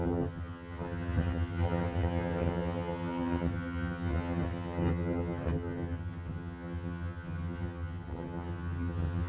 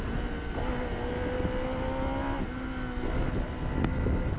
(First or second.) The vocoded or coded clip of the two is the first